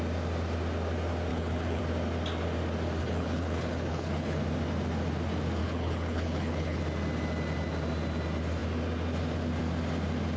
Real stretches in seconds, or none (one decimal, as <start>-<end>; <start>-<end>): 0.0-1.3; 1.8-3.0; 4.4-5.6; 6.8-10.4